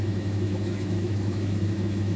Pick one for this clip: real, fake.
fake